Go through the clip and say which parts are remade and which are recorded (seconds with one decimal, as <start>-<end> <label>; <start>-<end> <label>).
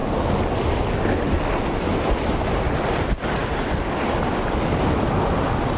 0.0-5.8 recorded